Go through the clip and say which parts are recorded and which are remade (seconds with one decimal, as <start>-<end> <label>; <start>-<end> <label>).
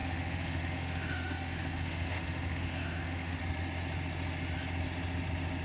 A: 0.0-3.4 remade; 3.4-5.6 recorded